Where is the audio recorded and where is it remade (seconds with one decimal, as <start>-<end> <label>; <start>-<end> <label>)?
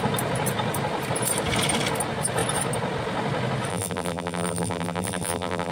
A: 0.0-3.7 recorded; 3.7-5.7 remade